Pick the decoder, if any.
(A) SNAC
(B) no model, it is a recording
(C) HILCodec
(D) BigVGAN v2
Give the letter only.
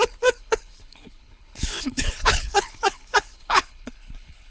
C